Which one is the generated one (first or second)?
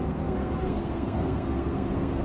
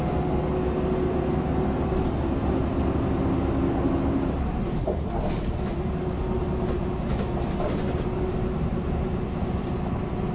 first